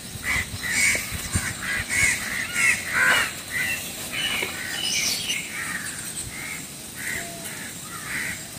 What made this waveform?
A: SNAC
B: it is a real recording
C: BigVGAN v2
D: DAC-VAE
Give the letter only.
B